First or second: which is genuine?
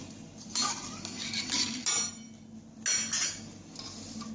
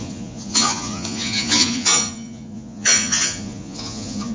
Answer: first